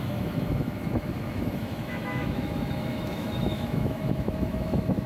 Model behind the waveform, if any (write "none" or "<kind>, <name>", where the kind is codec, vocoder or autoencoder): autoencoder, DAC-VAE